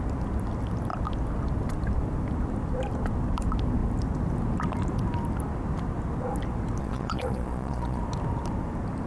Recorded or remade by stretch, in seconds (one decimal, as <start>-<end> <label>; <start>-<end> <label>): 0.0-6.8 recorded; 6.8-8.0 remade; 8.0-9.1 recorded